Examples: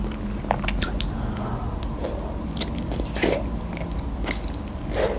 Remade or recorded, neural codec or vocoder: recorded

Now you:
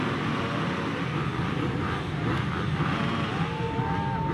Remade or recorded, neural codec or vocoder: recorded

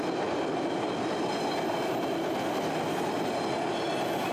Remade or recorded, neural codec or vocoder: recorded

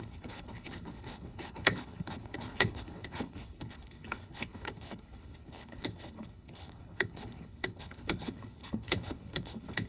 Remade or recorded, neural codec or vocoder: remade, codec, HILCodec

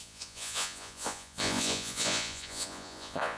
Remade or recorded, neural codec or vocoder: remade, vocoder, Vocos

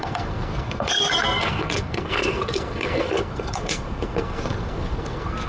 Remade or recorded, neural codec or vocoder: remade, codec, SNAC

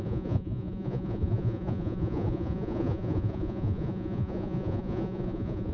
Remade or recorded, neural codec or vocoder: remade, vocoder, Vocos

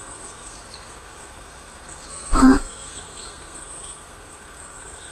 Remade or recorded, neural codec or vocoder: remade, codec, SNAC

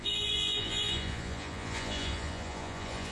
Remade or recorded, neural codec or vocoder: remade, vocoder, Vocos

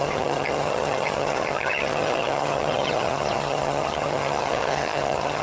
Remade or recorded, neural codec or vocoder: remade, vocoder, HiFi-GAN